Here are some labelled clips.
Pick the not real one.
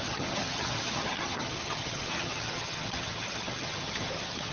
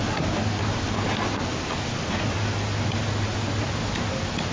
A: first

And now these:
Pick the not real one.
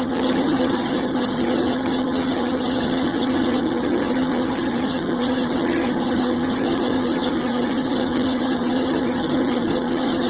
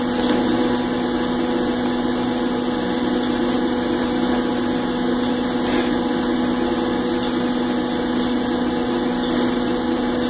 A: first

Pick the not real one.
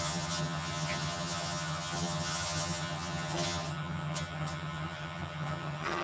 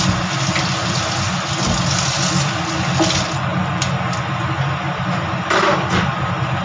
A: first